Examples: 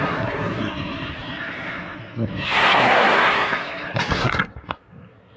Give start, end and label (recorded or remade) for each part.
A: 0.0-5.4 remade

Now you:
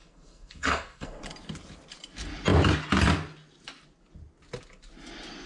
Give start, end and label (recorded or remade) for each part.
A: 0.0-1.2 remade; 1.2-5.5 recorded